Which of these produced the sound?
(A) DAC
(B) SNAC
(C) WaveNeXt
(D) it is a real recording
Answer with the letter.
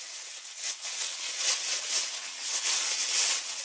C